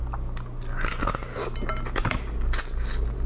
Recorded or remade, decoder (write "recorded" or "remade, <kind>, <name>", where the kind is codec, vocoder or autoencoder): recorded